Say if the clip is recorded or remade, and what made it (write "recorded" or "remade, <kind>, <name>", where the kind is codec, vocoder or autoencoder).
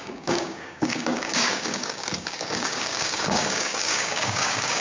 remade, codec, DAC